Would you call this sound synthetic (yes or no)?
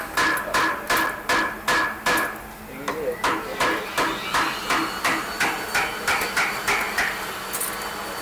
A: no